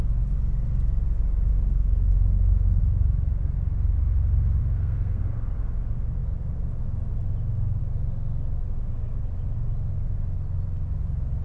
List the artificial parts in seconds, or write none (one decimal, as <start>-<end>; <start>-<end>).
1.5-2.8; 4.6-5.2